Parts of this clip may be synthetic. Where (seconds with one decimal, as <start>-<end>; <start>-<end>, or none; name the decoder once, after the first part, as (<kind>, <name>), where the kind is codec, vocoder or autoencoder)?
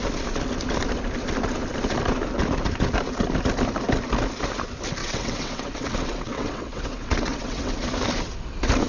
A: 5.0-7.7 (vocoder, WaveNeXt)